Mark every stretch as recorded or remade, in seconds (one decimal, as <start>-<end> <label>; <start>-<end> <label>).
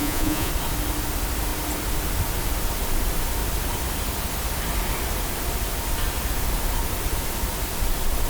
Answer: 0.0-0.5 remade; 0.5-8.3 recorded